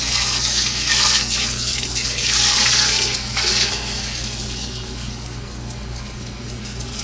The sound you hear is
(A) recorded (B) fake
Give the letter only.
B